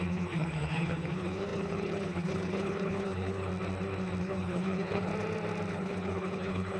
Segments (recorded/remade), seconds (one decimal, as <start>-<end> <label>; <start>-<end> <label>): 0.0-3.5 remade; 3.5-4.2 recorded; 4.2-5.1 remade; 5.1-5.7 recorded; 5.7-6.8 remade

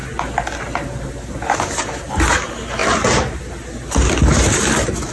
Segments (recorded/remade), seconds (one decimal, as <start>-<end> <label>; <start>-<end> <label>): 0.0-5.1 recorded

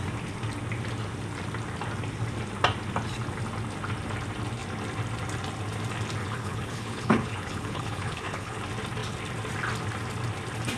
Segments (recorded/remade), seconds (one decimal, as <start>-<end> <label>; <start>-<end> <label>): 0.0-6.2 recorded; 6.2-8.6 remade; 8.6-10.8 recorded

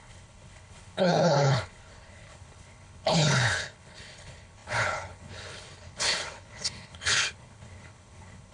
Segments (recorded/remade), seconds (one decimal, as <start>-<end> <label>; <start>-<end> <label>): 0.0-8.5 remade

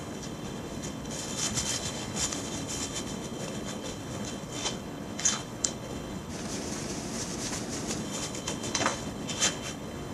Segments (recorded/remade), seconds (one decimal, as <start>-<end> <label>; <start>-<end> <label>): 0.0-6.3 remade; 6.3-8.0 recorded; 8.0-10.1 remade